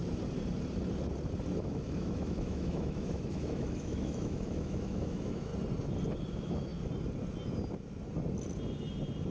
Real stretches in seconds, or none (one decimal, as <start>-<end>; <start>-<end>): 0.0-1.6; 5.5-6.3; 6.7-9.3